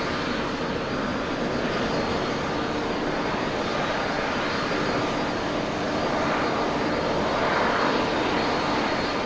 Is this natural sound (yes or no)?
yes